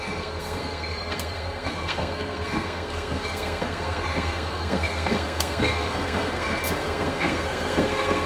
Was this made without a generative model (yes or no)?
no